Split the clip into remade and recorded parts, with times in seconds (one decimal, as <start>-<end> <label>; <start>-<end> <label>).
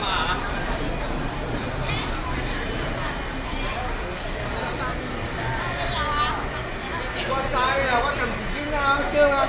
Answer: 0.0-3.2 remade; 3.2-9.5 recorded